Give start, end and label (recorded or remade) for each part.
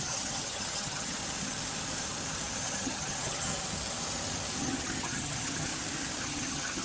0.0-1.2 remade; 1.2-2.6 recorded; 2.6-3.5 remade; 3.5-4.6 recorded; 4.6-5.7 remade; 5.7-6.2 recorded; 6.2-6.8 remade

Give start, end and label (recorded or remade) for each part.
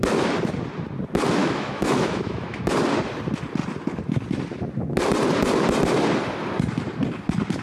0.0-1.4 recorded; 1.4-2.7 remade; 2.7-7.6 recorded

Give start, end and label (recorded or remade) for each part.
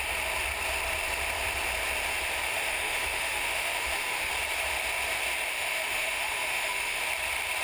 0.0-2.4 recorded; 2.4-4.3 remade; 4.3-5.5 recorded; 5.5-7.0 remade; 7.0-7.6 recorded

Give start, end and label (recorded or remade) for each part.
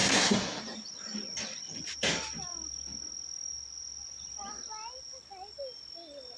0.0-0.6 remade; 0.6-6.4 recorded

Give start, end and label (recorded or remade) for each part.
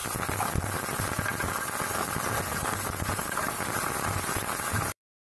0.0-2.4 recorded; 2.4-5.3 remade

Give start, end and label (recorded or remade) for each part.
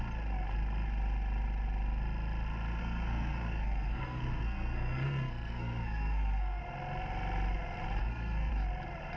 0.0-2.8 recorded; 2.8-6.6 remade; 6.6-8.0 recorded; 8.0-8.5 remade; 8.5-9.2 recorded